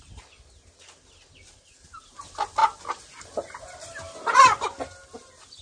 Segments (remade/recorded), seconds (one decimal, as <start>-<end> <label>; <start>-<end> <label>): 0.0-5.6 recorded